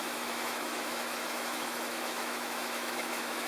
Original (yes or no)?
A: no